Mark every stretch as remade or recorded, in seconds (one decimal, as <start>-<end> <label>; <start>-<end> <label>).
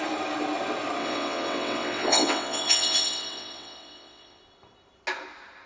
0.0-1.0 recorded; 1.0-4.4 remade; 4.4-5.7 recorded